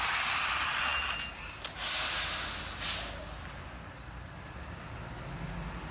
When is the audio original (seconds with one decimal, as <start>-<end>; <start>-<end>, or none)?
0.0-5.9